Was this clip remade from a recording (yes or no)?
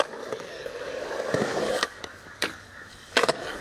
yes